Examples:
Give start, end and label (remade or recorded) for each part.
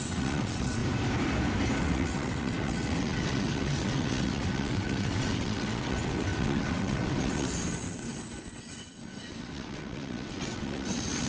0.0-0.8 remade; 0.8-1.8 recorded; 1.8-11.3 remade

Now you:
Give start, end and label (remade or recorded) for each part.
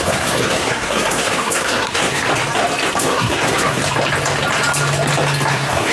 0.0-2.2 remade; 2.2-3.0 recorded; 3.0-3.8 remade; 3.8-5.5 recorded; 5.5-5.9 remade